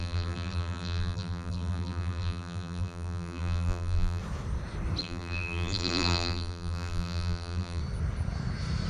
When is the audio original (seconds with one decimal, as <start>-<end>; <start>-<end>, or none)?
4.2-5.0; 7.8-8.9